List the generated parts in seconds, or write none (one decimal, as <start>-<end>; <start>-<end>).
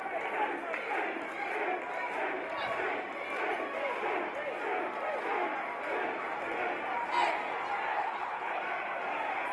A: 7.9-8.6